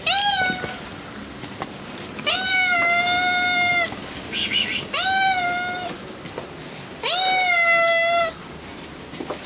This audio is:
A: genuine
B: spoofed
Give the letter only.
A